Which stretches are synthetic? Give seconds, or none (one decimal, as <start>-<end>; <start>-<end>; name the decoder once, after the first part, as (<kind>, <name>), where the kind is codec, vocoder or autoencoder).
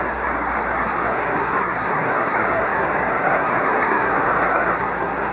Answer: 0.0-5.3 (codec, SNAC)